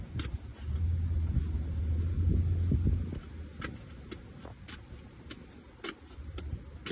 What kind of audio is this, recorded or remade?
recorded